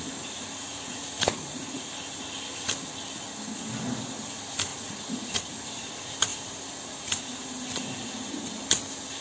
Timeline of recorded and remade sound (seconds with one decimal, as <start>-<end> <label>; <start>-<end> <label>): 0.0-0.6 recorded; 0.6-1.9 remade; 1.9-4.7 recorded; 4.7-5.4 remade; 5.4-9.2 recorded